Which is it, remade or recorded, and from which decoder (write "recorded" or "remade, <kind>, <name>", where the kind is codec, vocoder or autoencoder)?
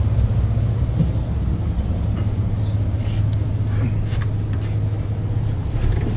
recorded